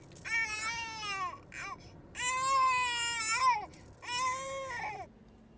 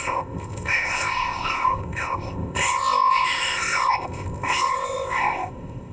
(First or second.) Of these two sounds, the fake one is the second